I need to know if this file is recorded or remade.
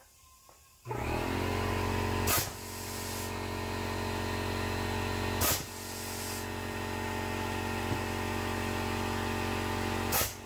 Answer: recorded